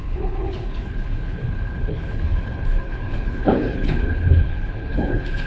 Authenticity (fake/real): fake